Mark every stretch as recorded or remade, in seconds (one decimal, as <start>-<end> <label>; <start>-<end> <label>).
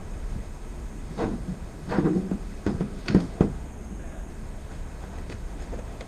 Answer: 0.0-3.7 remade; 3.7-4.3 recorded; 4.3-6.1 remade